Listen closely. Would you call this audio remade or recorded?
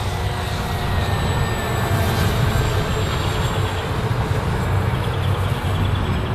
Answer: recorded